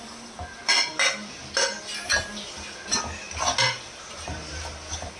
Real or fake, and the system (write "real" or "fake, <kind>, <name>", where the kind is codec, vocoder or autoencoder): real